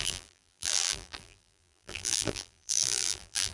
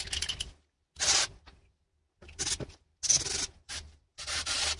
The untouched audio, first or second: second